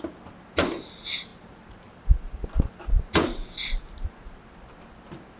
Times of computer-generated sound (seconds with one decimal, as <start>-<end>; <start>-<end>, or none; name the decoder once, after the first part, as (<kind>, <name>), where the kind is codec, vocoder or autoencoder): none